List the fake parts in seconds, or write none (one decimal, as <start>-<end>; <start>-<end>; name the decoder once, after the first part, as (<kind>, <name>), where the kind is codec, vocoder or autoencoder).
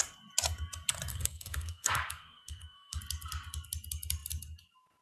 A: 1.1-3.0 (codec, SNAC)